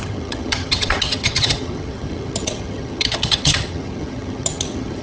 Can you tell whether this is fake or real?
fake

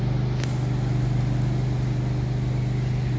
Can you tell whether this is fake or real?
real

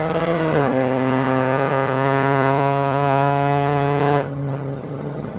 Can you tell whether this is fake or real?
fake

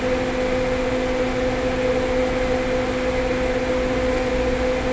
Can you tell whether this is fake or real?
real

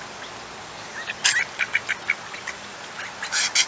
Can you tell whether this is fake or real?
real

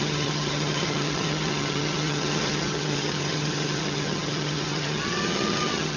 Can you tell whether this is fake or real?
fake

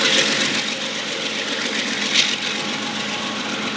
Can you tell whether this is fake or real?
real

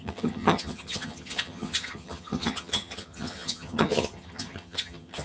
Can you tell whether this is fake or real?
fake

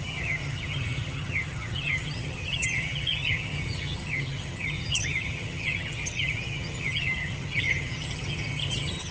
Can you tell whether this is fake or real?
fake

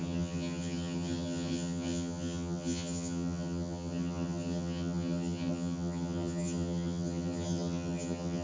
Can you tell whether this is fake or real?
fake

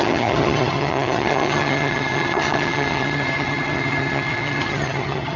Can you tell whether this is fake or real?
fake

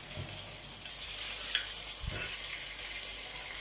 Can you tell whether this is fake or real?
real